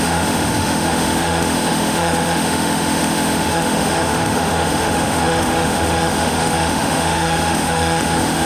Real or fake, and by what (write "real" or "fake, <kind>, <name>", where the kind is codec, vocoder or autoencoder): fake, autoencoder, DAC-VAE